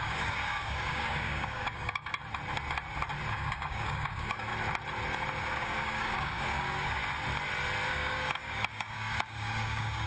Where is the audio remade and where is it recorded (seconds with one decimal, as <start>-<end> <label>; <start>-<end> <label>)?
0.0-2.1 remade; 2.1-3.3 recorded; 3.3-4.5 remade; 4.5-5.4 recorded; 5.4-7.0 remade; 7.0-7.9 recorded; 7.9-10.1 remade